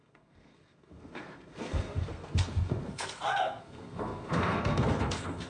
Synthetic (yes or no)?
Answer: yes